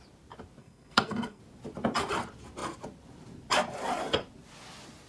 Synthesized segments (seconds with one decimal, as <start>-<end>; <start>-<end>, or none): 0.6-1.4